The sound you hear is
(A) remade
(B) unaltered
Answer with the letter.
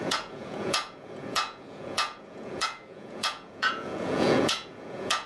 A